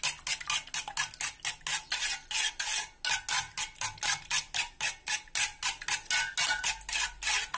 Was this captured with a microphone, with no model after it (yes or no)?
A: yes